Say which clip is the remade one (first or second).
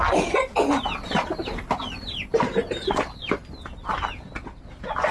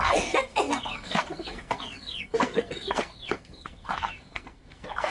second